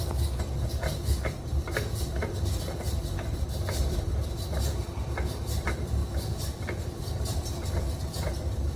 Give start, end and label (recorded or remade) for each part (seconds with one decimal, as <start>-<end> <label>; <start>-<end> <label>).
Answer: 0.0-4.2 remade; 4.2-5.4 recorded; 5.4-8.8 remade